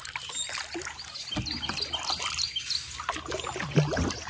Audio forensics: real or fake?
real